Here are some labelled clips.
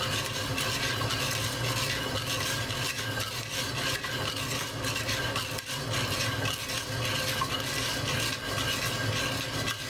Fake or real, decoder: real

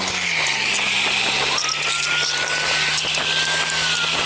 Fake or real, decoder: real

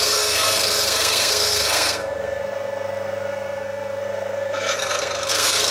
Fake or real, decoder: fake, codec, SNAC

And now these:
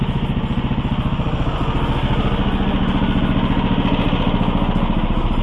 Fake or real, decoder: real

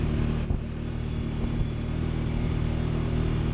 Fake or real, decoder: real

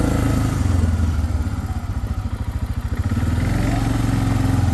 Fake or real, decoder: real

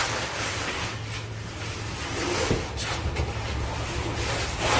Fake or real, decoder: real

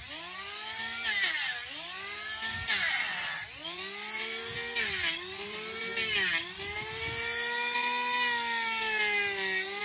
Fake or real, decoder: real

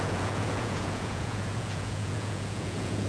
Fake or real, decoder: fake, vocoder, Vocos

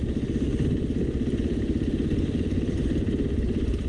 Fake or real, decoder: real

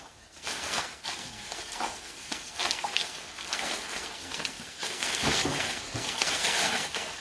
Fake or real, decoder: fake, codec, SNAC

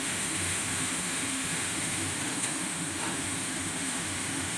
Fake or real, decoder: fake, autoencoder, DAC-VAE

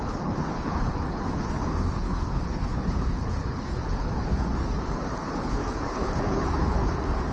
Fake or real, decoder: fake, codec, HILCodec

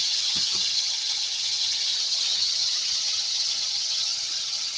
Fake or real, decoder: fake, vocoder, HiFi-GAN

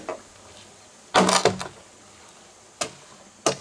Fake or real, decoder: real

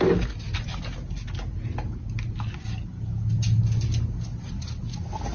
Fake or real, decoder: real